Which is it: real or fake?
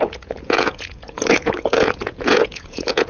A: fake